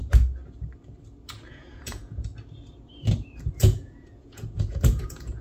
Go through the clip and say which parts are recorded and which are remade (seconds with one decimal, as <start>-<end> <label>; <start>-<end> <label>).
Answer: 0.0-1.5 recorded; 1.5-2.3 remade; 2.3-3.4 recorded; 3.4-5.4 remade